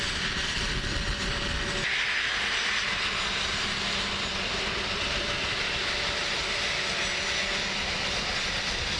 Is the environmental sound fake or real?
real